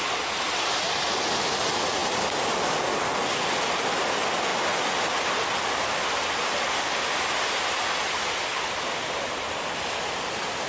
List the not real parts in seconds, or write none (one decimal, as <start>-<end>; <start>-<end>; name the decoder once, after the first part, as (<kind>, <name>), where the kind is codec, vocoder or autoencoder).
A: none